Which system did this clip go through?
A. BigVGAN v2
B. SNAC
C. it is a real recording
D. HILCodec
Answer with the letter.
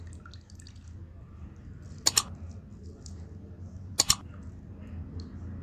C